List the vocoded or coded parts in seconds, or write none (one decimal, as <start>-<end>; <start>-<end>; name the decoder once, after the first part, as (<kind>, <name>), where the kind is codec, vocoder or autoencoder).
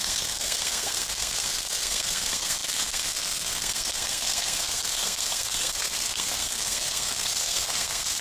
0.0-8.2 (codec, SNAC)